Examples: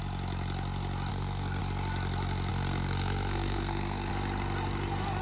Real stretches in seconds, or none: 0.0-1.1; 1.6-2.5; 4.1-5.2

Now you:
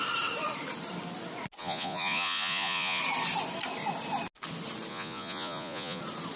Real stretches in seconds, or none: 0.0-1.6; 3.0-4.9; 6.0-6.4

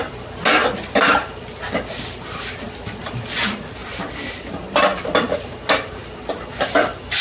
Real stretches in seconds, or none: 0.0-7.2

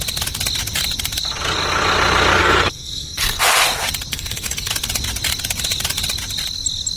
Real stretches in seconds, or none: 0.0-2.4; 3.4-4.1; 4.7-7.0

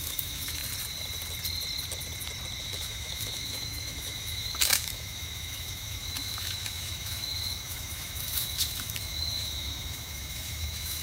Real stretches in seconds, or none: 0.6-2.6

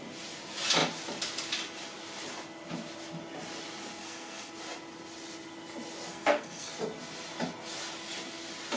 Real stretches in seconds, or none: 0.0-4.0; 4.5-6.1; 6.7-8.8

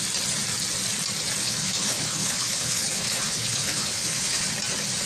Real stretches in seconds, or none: 0.0-1.4; 4.5-5.1